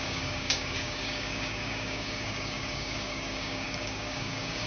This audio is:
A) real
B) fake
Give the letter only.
B